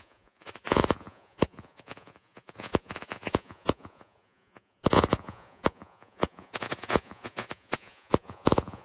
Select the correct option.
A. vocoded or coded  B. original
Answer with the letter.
A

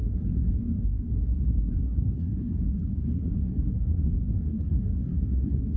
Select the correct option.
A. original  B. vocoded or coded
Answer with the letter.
B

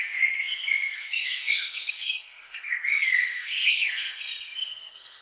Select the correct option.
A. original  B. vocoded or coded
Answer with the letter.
B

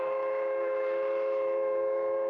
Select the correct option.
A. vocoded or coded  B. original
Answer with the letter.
A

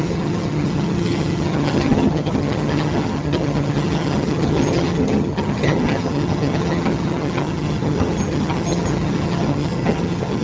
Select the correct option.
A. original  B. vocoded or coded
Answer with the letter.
B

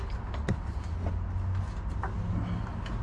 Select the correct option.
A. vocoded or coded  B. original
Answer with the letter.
B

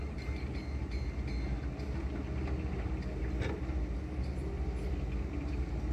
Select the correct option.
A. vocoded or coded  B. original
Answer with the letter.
B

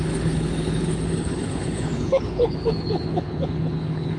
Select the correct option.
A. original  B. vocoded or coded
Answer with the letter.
B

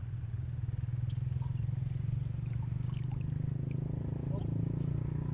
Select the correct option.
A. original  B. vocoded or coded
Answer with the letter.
A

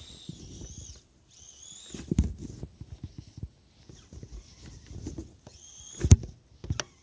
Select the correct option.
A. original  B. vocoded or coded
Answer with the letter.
A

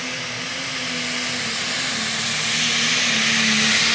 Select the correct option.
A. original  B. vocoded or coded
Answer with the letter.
A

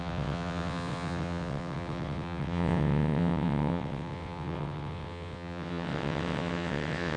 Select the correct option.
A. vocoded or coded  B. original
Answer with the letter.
A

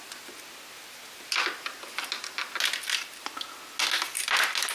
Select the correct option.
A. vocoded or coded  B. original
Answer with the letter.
B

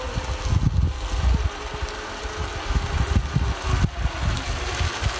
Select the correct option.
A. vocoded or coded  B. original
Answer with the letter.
B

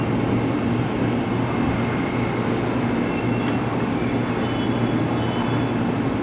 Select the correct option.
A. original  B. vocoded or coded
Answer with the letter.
A